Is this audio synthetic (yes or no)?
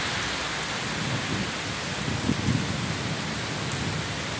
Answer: no